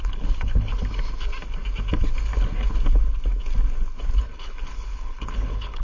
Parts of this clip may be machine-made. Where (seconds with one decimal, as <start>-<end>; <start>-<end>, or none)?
0.0-0.7; 4.2-5.8